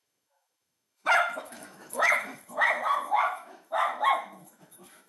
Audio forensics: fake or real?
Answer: fake